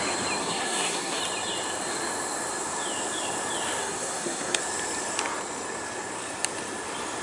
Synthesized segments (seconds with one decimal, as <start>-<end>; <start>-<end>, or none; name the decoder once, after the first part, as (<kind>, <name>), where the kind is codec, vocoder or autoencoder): 0.4-1.2 (codec, SNAC); 3.8-4.6